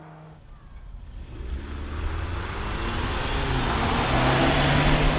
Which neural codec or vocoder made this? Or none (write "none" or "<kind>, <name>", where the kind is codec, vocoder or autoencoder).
none